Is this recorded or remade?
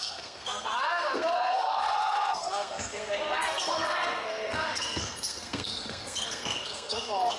remade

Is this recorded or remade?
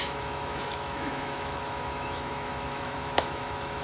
remade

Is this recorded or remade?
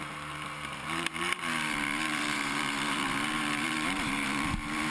remade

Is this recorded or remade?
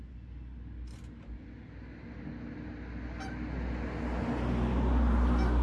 recorded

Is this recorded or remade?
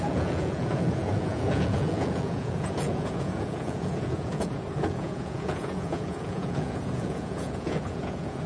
remade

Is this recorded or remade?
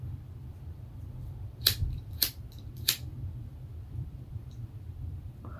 remade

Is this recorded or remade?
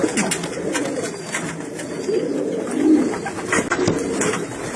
recorded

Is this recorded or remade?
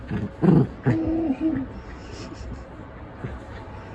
recorded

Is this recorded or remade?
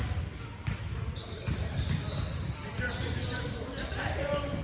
recorded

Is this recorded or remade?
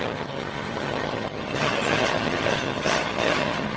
remade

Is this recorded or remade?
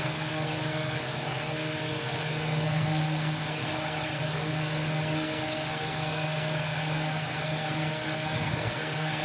remade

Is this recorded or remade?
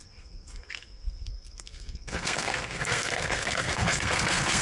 remade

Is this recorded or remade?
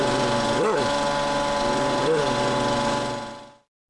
recorded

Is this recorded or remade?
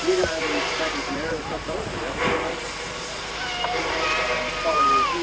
remade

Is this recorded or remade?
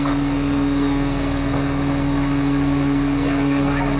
remade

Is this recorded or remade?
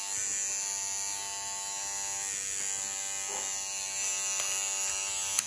recorded